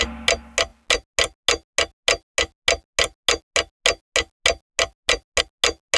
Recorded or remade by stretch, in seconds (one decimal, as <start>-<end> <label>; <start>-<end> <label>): 0.0-6.0 recorded